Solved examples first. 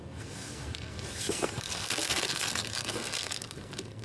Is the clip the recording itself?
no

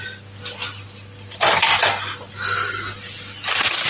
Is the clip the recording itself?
yes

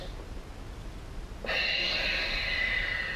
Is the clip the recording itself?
yes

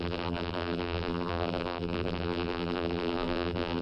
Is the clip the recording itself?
no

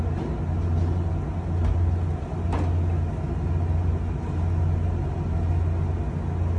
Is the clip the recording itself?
yes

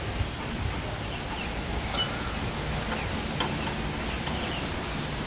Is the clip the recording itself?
yes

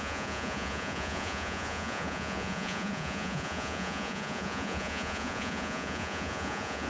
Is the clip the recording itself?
no